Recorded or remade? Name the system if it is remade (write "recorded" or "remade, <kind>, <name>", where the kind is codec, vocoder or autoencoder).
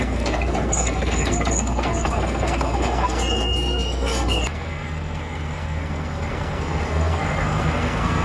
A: remade, codec, SNAC